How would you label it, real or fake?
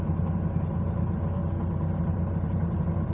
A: real